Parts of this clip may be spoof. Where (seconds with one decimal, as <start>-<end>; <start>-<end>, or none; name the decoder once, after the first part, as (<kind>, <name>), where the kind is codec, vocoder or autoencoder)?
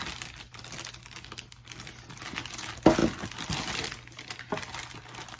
none